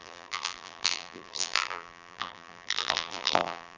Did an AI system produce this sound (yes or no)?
yes